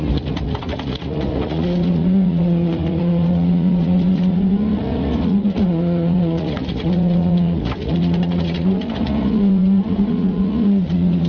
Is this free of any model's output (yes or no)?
no